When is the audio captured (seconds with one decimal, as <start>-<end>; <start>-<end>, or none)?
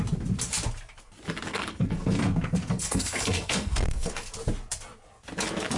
0.0-1.5; 4.3-5.8